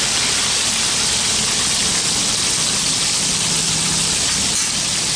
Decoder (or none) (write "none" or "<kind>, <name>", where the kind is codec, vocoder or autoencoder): none